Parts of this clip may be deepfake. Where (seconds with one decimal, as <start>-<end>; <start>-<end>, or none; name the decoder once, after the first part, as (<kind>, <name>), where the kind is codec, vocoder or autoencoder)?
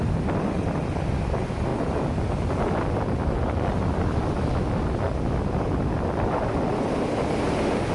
none